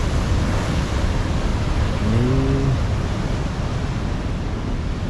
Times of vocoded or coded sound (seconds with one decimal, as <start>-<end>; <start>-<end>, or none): none